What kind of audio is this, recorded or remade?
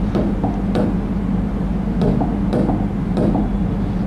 recorded